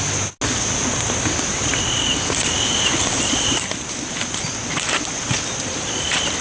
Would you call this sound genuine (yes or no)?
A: yes